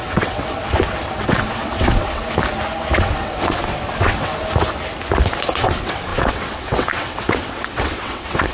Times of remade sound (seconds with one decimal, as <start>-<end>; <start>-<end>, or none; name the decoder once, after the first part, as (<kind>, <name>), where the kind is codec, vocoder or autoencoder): 0.0-2.2 (vocoder, WaveNeXt); 3.0-4.3; 5.4-8.5

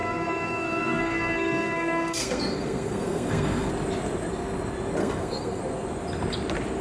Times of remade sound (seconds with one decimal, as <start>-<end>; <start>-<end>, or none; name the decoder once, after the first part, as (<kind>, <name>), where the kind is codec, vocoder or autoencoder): 0.0-3.7 (codec, SNAC); 5.0-5.6